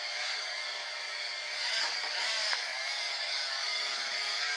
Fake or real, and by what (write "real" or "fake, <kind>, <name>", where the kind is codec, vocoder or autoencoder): fake, codec, DAC